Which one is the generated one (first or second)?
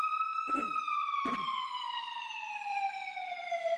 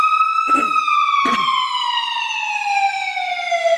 first